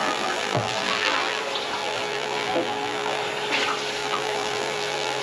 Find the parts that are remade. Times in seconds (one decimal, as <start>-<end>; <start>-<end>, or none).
0.0-1.4; 1.8-3.2; 4.0-5.2